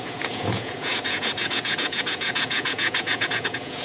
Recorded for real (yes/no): no